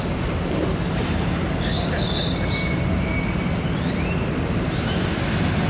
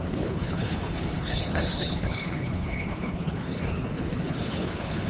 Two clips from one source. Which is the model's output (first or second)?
second